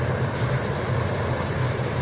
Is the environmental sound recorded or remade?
remade